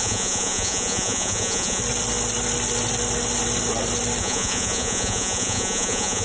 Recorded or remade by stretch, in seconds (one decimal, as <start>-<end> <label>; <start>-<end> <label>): 0.0-1.8 remade; 1.8-4.2 recorded; 4.2-6.2 remade